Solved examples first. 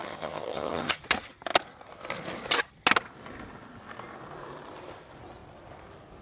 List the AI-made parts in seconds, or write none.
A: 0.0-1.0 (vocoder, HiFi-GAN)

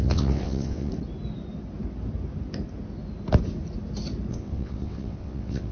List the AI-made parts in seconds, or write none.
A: 0.0-0.9 (vocoder, WaveNeXt); 4.3-5.7

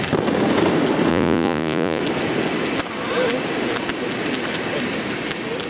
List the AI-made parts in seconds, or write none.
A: 1.1-2.0 (vocoder, Vocos)

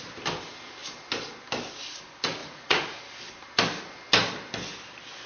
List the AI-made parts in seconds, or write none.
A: 2.4-3.0 (vocoder, Vocos)